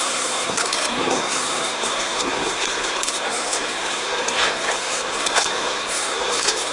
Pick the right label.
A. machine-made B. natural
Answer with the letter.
A